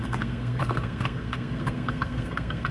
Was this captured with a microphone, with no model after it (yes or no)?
no